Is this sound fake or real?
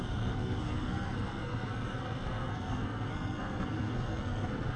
fake